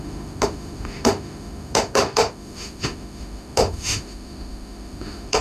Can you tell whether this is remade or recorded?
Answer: remade